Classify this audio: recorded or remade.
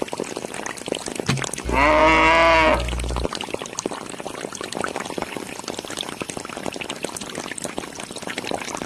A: recorded